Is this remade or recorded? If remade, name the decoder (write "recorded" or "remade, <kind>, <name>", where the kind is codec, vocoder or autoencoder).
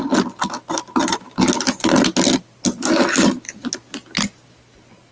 recorded